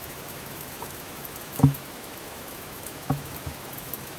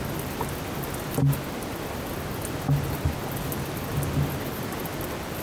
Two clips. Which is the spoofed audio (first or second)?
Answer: first